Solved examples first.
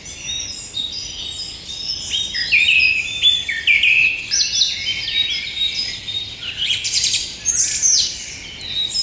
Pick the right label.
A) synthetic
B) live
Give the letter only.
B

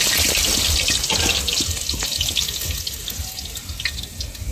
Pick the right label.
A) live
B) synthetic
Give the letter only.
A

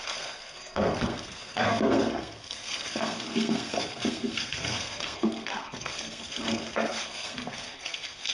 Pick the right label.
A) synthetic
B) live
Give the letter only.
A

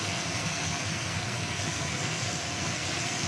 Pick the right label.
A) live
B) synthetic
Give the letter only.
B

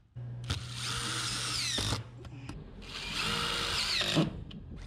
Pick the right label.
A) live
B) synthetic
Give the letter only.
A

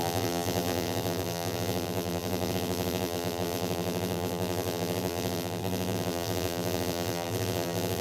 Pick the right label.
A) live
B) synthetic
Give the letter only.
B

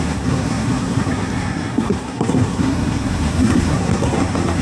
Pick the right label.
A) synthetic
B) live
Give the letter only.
A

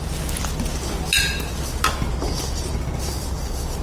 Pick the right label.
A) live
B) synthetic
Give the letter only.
A